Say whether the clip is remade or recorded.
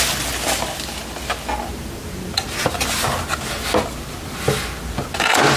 recorded